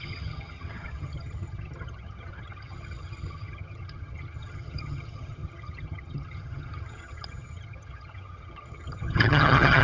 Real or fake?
fake